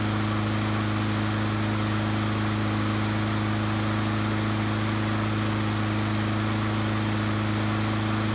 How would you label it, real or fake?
real